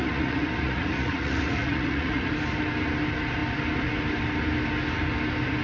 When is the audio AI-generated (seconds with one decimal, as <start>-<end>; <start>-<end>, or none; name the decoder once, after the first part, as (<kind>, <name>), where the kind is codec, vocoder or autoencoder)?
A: 0.0-2.3 (vocoder, Vocos)